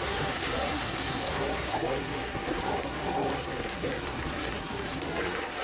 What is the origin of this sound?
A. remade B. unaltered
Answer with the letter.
A